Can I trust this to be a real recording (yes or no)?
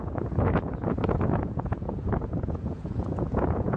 no